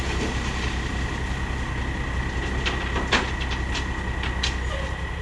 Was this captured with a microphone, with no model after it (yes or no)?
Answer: yes